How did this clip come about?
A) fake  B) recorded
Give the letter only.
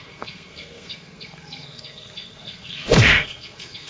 A